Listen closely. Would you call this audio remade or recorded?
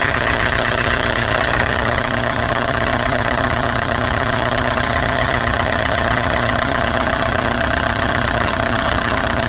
remade